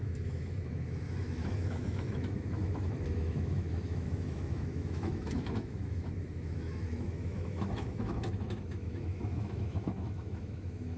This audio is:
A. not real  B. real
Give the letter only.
A